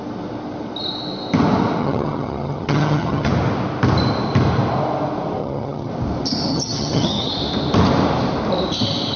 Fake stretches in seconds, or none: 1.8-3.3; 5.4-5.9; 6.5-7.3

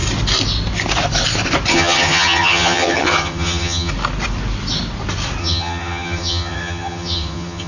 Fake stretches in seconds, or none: 1.7-3.9; 5.4-7.7